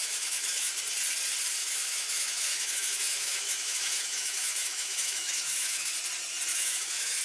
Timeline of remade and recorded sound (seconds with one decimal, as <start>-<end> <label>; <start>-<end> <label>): 0.0-0.7 remade; 0.7-1.6 recorded; 1.6-5.9 remade; 5.9-6.5 recorded; 6.5-7.2 remade